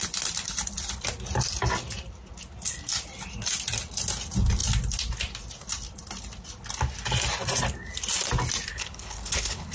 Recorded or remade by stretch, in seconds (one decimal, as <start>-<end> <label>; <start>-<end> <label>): 0.0-8.7 recorded; 8.7-9.7 remade